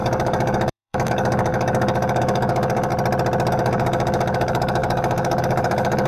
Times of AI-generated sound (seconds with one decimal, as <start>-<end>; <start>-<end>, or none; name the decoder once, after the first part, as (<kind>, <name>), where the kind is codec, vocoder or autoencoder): 0.0-2.9 (codec, DAC); 3.5-6.1